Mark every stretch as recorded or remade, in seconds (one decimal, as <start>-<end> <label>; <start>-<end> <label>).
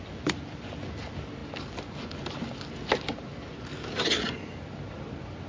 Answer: 0.0-5.5 recorded